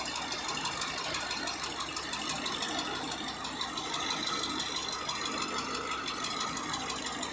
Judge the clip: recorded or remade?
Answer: recorded